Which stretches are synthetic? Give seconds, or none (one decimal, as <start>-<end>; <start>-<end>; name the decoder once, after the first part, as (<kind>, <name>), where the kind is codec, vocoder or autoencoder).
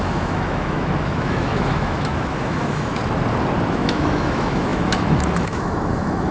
0.0-3.0 (autoencoder, DAC-VAE); 3.7-6.3